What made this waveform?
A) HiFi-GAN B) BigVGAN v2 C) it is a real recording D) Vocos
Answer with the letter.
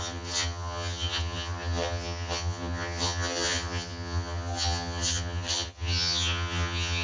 A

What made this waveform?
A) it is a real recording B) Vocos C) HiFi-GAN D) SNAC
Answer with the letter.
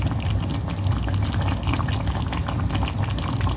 A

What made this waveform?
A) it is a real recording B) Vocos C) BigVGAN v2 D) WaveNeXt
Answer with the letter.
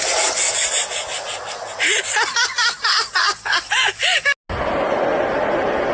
A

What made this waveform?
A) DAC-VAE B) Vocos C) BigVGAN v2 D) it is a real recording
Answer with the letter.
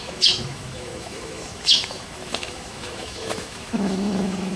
A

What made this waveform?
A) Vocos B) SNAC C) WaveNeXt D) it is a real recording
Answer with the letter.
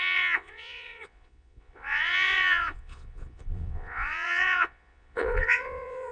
A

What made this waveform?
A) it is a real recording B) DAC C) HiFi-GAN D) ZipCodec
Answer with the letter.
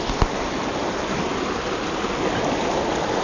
A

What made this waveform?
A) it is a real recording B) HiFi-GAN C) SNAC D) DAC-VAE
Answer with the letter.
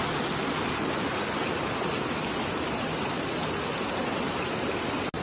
A